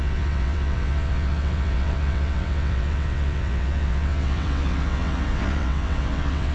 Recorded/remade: remade